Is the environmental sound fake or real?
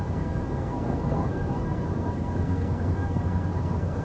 fake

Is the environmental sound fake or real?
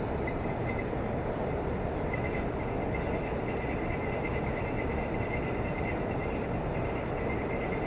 real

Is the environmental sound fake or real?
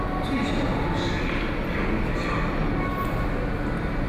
real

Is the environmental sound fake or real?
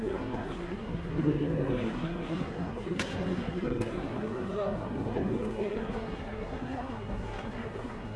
fake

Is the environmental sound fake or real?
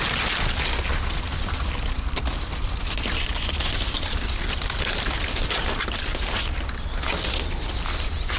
real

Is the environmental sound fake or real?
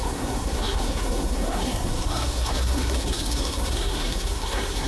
fake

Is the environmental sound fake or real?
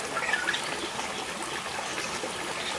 real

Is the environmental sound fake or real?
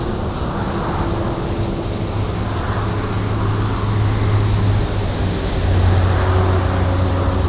real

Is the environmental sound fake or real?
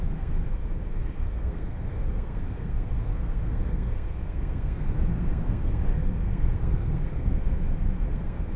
fake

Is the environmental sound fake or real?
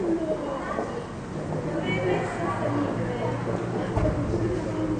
real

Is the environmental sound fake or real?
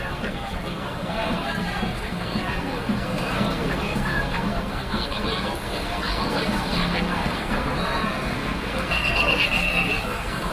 fake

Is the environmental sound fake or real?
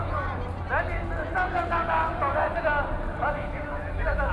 real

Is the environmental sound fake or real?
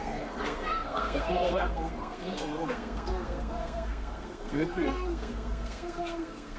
fake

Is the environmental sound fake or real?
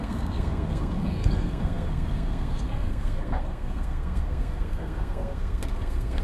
fake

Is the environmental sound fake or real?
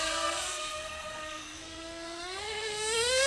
fake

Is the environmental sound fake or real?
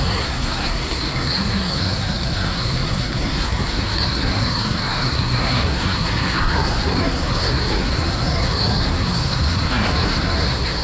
fake